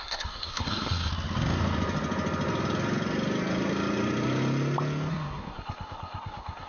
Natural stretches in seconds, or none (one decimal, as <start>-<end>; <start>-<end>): 1.1-5.1